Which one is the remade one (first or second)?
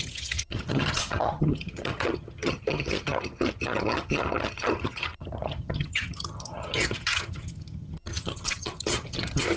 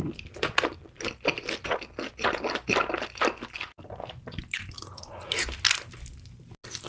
first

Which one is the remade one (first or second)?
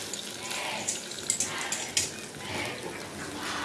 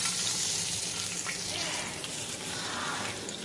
second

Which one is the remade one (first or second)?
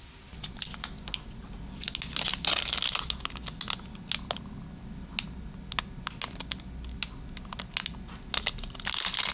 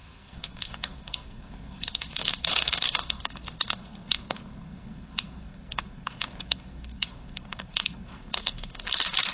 second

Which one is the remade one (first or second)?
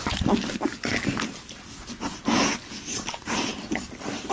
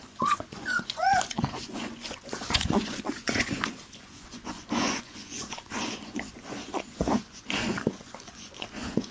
second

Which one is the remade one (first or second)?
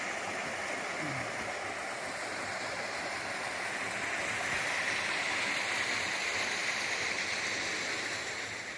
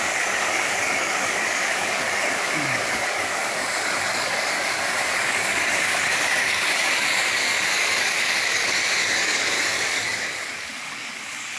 second